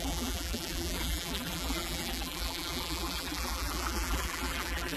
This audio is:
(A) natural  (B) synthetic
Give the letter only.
B